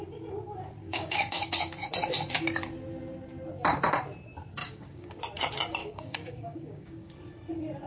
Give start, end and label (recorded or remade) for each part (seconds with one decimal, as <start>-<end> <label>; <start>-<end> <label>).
0.0-0.8 recorded; 0.8-1.9 remade; 1.9-4.6 recorded; 4.6-5.2 remade; 5.2-5.8 recorded; 5.8-7.1 remade; 7.1-7.9 recorded